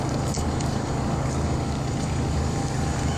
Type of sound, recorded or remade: remade